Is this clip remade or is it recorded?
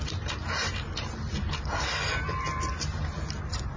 remade